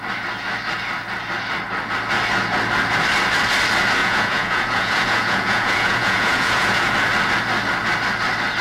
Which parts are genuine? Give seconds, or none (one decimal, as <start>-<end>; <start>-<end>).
0.0-4.0; 6.9-8.6